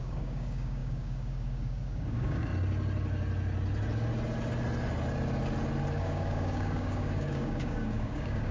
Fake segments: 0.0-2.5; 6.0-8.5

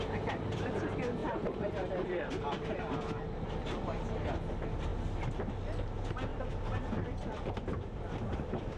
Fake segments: 1.2-2.8; 6.3-8.8

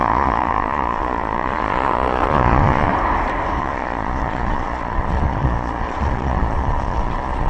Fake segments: 0.0-2.9; 3.6-7.5

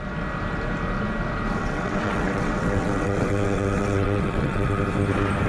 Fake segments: 1.6-4.8

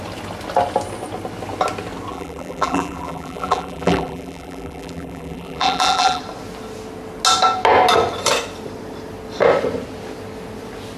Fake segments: 2.1-6.2

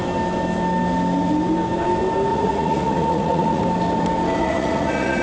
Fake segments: 2.3-3.6; 4.4-5.2

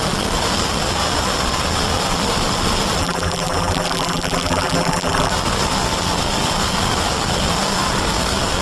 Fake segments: 3.0-5.3

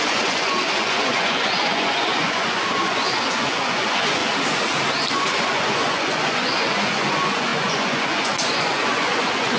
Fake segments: 0.0-4.2; 5.1-9.6